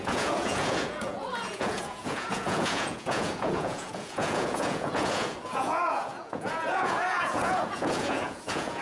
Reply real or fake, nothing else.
fake